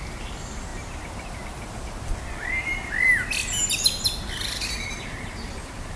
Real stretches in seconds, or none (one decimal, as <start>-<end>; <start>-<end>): 0.0-6.0